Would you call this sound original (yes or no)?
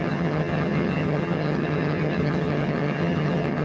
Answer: no